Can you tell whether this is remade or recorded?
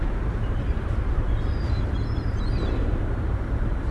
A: remade